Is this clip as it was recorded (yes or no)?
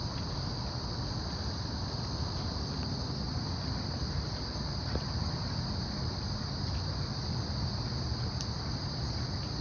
yes